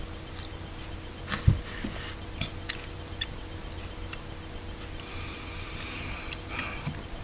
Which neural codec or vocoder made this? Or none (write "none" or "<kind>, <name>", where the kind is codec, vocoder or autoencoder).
none